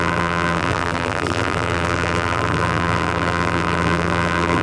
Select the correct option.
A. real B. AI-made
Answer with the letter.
B